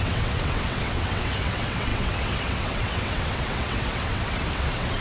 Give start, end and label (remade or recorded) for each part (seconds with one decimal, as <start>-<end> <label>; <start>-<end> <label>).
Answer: 0.0-5.0 remade

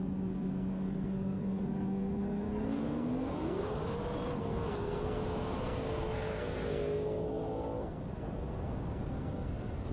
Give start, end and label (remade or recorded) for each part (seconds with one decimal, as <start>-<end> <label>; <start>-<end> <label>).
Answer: 0.0-3.8 remade; 3.8-4.4 recorded; 4.4-9.9 remade

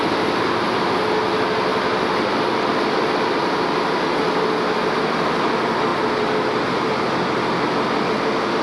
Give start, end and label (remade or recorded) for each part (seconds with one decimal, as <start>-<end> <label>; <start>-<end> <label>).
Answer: 0.0-1.7 recorded; 1.7-4.5 remade; 4.5-5.9 recorded; 5.9-8.1 remade; 8.1-8.6 recorded

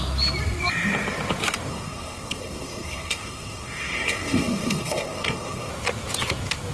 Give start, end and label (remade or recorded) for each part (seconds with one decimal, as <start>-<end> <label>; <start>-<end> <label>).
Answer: 0.0-1.7 recorded; 1.7-5.7 remade; 5.7-6.7 recorded